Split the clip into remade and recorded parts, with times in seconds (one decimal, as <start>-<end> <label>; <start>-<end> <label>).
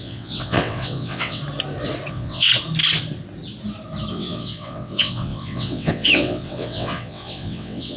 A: 0.0-1.4 remade; 1.4-2.1 recorded; 2.1-2.5 remade; 2.5-4.1 recorded; 4.1-8.0 remade